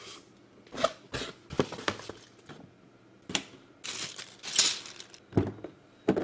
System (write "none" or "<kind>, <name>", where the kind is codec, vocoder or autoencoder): none